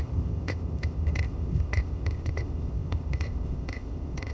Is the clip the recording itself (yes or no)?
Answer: no